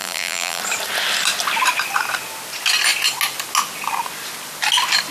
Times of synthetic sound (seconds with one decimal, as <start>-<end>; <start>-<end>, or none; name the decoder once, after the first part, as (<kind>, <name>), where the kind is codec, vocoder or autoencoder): 0.0-0.6 (vocoder, BigVGAN v2)